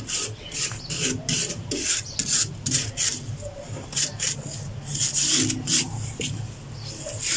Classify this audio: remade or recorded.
recorded